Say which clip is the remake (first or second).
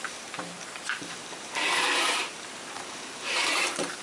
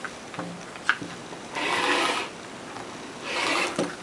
first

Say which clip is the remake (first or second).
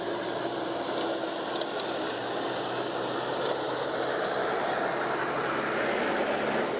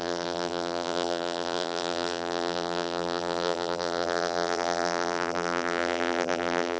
second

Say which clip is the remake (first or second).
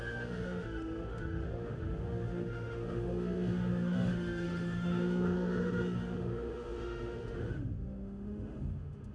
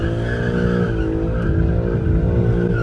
first